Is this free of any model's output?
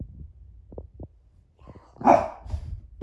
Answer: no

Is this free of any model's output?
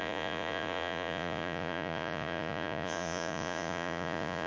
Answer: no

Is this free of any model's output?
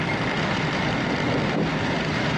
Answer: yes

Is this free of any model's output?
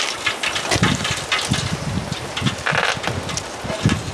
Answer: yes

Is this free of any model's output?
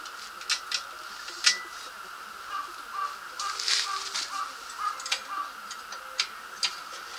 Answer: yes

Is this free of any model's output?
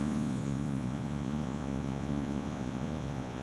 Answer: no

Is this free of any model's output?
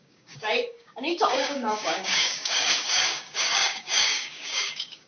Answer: no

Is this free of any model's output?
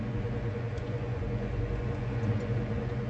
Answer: no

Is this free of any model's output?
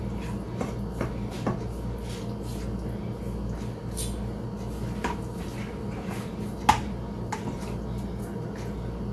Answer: yes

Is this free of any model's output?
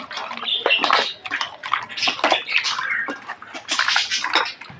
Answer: yes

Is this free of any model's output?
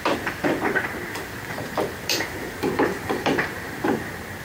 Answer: no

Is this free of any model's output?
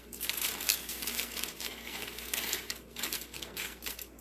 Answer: no